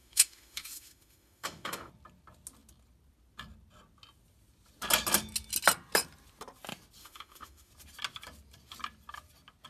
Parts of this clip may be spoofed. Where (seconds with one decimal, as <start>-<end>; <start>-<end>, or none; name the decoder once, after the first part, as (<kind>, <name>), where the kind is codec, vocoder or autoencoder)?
0.0-1.9 (autoencoder, DAC-VAE); 7.0-7.7